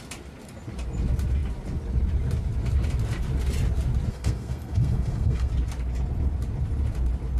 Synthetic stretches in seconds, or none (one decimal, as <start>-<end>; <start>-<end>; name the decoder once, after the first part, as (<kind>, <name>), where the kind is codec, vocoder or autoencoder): 4.1-5.5 (codec, SNAC)